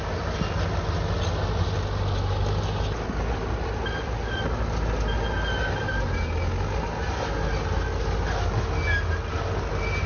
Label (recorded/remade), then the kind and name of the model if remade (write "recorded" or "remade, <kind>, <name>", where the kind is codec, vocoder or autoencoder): recorded